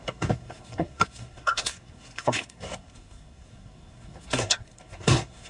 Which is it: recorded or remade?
remade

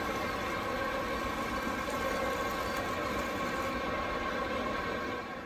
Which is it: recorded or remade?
recorded